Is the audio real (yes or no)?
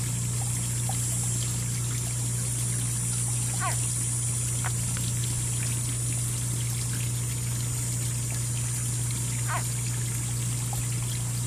yes